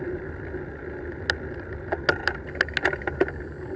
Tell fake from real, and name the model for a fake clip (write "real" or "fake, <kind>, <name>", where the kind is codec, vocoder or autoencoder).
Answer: real